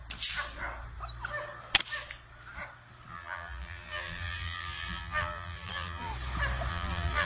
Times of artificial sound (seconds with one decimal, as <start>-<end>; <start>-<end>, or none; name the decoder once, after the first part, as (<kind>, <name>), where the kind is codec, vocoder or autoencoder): 3.1-6.1 (vocoder, BigVGAN v2); 6.7-7.2